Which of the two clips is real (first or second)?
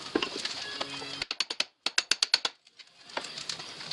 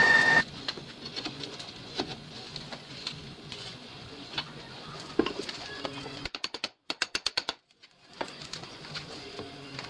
first